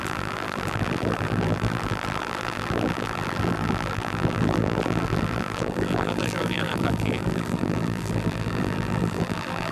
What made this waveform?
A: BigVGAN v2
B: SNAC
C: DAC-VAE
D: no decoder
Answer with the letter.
A